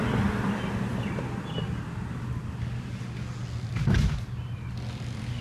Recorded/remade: recorded